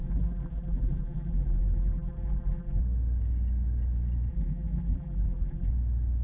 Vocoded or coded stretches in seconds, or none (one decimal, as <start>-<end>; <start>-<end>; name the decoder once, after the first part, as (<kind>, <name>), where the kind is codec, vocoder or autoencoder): 0.0-2.8 (vocoder, BigVGAN v2); 4.3-5.7